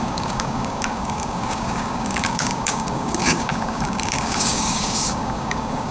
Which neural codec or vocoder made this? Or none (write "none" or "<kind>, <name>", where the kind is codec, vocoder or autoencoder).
codec, DAC